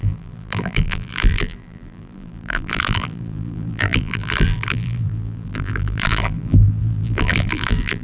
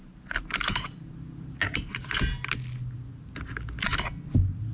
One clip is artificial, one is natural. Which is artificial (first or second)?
first